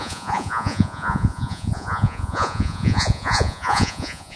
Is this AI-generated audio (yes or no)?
yes